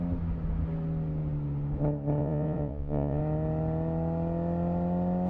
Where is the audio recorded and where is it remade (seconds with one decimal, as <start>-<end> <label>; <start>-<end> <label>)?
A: 0.0-2.2 recorded; 2.2-3.2 remade; 3.2-5.3 recorded